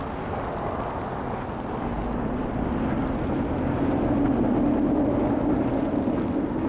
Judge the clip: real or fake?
real